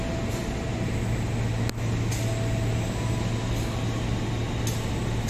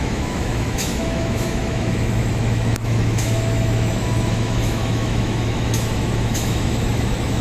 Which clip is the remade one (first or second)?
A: second